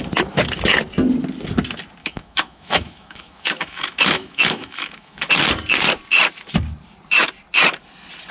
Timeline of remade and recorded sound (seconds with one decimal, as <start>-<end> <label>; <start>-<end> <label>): 0.0-2.0 recorded; 2.0-5.3 remade; 5.3-8.3 recorded